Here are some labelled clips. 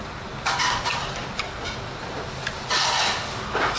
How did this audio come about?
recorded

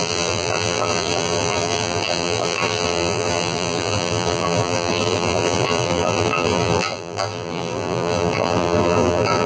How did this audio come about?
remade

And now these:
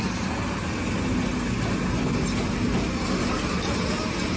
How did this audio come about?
recorded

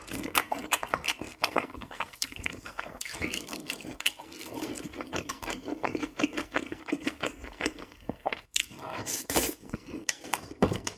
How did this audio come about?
remade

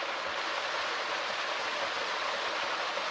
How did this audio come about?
recorded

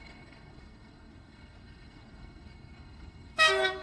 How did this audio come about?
remade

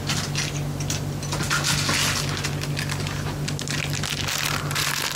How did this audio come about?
recorded